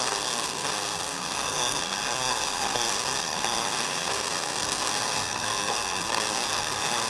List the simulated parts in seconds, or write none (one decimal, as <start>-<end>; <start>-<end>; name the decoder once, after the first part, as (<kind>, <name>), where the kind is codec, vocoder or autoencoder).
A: 0.0-7.1 (codec, SNAC)